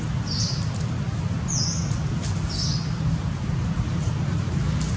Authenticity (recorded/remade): recorded